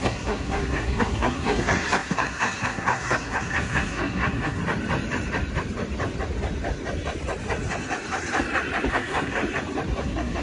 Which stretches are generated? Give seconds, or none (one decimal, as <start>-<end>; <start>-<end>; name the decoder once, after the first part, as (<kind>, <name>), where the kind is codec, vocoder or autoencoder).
0.0-4.6 (codec, SNAC); 8.9-9.4; 10.0-10.4